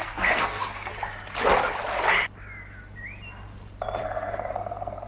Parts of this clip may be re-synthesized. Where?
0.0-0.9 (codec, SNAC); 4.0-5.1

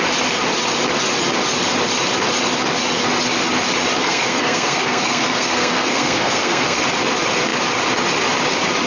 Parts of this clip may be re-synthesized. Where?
4.0-6.8 (codec, SNAC)

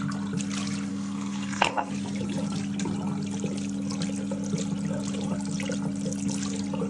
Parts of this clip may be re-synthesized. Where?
0.9-1.9 (codec, SNAC)